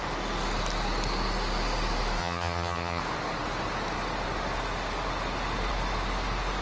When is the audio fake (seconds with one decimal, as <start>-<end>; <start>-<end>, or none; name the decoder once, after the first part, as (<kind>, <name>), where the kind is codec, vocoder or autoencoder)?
2.2-3.0 (vocoder, HiFi-GAN)